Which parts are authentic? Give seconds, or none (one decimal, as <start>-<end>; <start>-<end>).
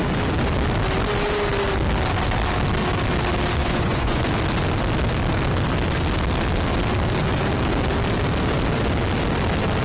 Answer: 0.0-3.6; 4.2-9.8